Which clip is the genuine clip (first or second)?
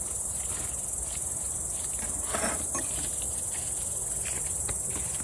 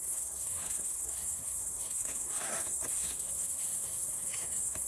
first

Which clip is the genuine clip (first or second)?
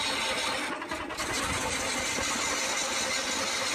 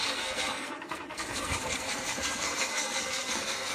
first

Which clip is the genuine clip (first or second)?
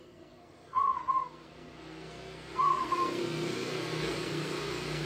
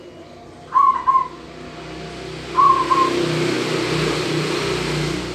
second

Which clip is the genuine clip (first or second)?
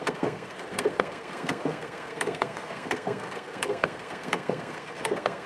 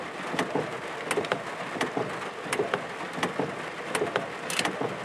second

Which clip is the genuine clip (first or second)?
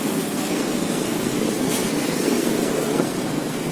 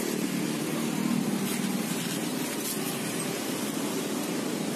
second